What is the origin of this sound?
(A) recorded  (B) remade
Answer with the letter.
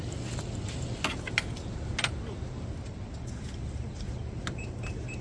A